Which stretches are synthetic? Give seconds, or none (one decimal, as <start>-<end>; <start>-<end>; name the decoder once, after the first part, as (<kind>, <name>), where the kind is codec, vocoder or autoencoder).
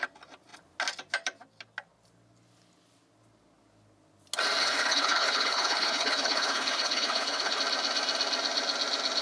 4.6-7.6 (codec, HILCodec)